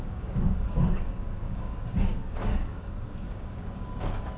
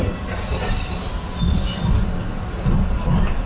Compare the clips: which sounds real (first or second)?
second